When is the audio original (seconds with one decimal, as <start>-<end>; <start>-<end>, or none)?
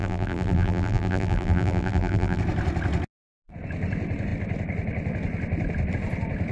2.4-6.5